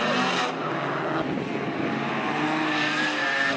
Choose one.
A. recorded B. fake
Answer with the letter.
A